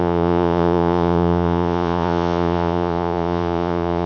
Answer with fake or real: fake